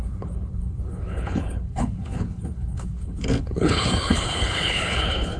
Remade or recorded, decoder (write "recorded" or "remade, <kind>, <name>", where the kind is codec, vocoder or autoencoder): remade, codec, HILCodec